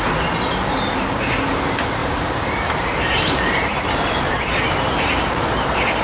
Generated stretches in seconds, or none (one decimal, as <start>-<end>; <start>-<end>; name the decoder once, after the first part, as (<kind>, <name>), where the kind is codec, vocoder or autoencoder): none